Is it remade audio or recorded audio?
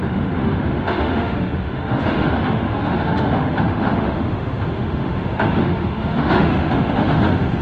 remade